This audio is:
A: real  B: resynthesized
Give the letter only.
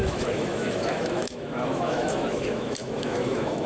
B